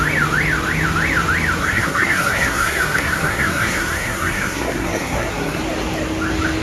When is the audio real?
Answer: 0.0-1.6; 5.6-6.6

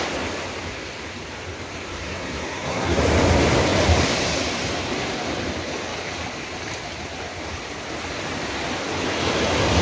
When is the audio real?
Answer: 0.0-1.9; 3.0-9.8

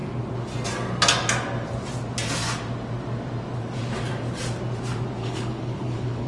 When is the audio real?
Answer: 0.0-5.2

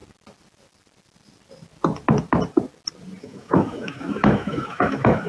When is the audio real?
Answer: 0.0-3.2

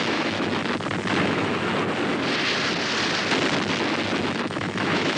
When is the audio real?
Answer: 0.6-1.2; 1.7-4.2

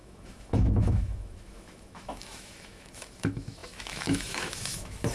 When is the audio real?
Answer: none

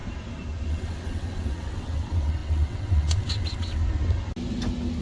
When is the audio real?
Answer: 0.0-0.7; 3.8-5.0

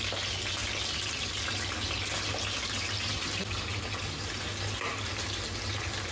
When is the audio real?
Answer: 0.0-6.1